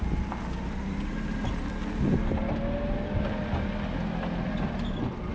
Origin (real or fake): real